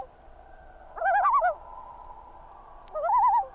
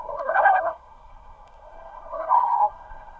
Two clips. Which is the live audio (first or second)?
first